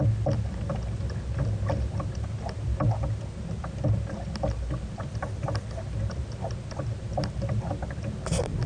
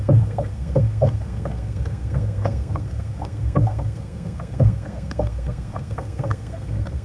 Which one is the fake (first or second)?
second